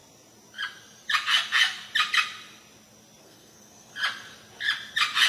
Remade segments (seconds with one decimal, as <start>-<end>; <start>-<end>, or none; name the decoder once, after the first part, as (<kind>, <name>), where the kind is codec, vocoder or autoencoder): 3.2-3.9 (codec, SNAC)